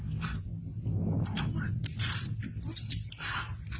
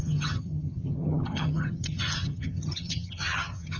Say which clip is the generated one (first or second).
second